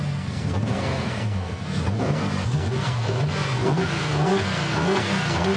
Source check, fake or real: fake